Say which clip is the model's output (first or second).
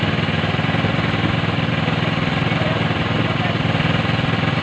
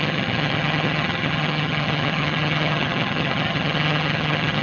second